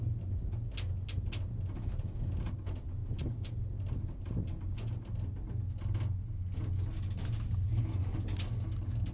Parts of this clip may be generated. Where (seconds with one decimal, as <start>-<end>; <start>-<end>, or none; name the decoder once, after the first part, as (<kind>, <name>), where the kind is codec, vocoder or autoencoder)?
none